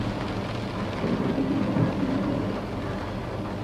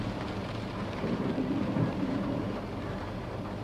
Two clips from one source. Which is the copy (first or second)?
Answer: second